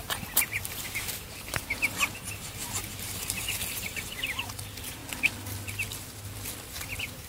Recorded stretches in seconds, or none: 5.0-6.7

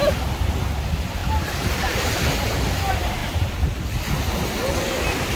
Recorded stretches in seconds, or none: 0.0-1.2; 2.0-3.2; 3.8-5.4

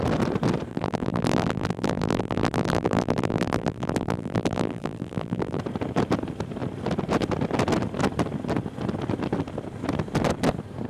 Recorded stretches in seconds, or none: 0.0-0.7; 5.6-10.9

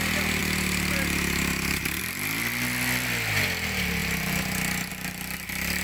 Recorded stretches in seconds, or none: 0.0-0.4; 2.0-4.0; 4.9-5.8

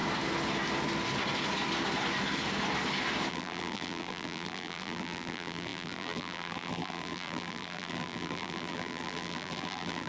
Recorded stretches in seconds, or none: 0.0-3.3